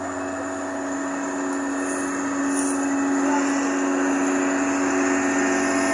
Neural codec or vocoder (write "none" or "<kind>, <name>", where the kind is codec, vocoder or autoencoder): none